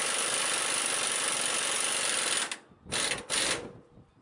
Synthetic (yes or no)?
no